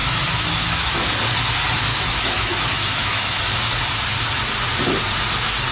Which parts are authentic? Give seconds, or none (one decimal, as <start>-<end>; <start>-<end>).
1.1-1.9; 3.4-5.7